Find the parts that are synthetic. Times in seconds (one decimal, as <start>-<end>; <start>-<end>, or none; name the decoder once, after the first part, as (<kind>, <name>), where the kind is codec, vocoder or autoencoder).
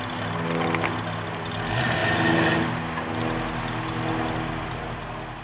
none